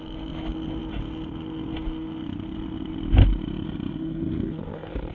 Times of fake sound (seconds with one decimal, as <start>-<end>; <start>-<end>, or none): none